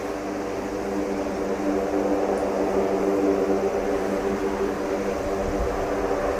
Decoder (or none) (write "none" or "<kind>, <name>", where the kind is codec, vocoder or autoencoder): none